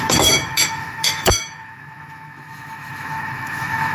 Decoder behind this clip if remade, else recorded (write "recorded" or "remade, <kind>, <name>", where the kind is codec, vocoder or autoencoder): remade, autoencoder, DAC-VAE